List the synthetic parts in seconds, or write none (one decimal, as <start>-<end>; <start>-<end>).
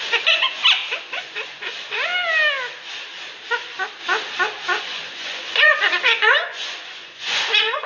0.0-0.6; 1.1-2.1; 4.8-7.9